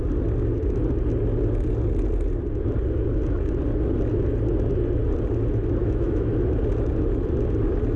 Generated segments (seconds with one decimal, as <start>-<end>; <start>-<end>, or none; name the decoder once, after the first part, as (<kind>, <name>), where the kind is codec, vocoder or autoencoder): 5.8-6.3 (autoencoder, DAC-VAE)